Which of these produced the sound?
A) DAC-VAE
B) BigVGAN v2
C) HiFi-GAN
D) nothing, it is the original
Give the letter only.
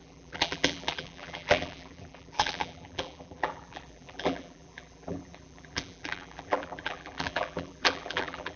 B